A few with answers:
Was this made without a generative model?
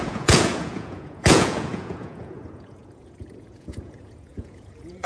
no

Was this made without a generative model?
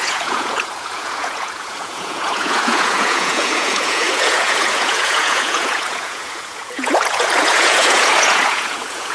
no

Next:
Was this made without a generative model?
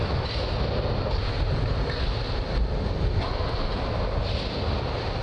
yes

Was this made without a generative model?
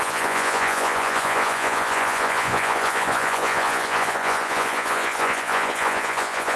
no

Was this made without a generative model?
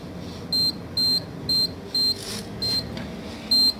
yes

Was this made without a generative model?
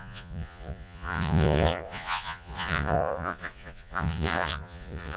no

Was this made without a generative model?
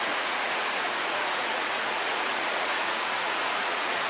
no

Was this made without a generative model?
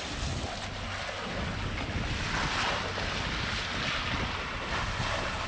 yes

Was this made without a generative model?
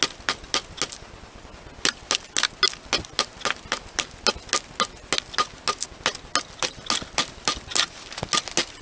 yes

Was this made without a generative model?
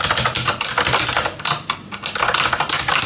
yes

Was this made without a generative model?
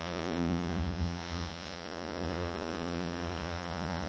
no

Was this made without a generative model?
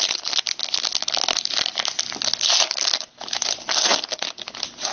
yes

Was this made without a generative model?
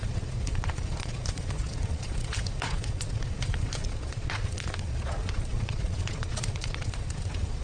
no